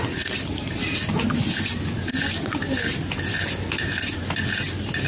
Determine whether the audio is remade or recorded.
recorded